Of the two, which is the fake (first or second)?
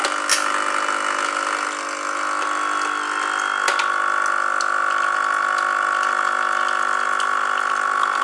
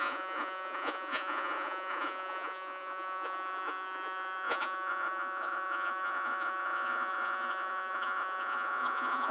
second